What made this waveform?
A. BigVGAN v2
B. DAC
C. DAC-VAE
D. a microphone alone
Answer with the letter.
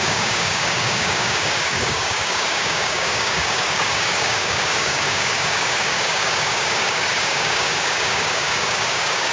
B